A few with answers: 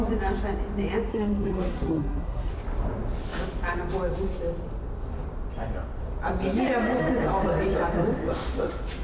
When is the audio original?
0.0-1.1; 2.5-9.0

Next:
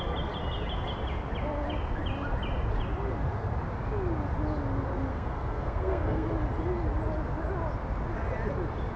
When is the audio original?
0.0-5.1; 6.3-9.0

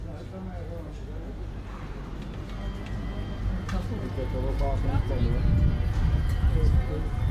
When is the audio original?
0.0-7.3

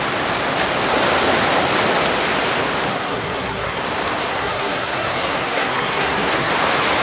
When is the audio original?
0.0-2.9; 3.8-4.3; 6.5-7.0

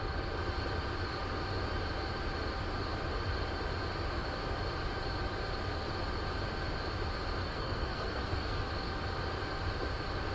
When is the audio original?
0.0-7.4; 8.6-10.3

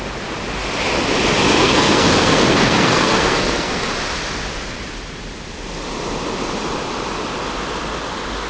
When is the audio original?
0.0-1.6; 3.9-8.5

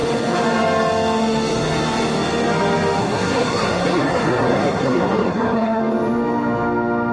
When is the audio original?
0.0-3.0; 5.8-7.1